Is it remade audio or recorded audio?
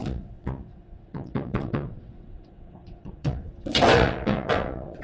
remade